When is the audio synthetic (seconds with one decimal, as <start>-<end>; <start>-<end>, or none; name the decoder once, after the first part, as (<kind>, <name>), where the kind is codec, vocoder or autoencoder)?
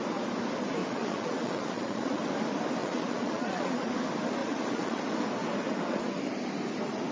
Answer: 0.8-2.2 (vocoder, Vocos); 2.8-3.9; 4.4-5.0